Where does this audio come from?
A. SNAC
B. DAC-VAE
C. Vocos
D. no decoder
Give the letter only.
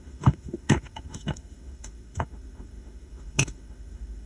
B